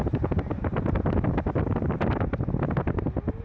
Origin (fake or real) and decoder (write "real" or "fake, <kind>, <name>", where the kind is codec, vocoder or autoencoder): real